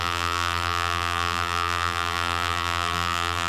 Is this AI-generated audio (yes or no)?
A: yes